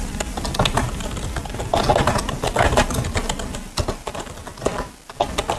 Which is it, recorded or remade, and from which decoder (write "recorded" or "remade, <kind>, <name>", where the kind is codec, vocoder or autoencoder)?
recorded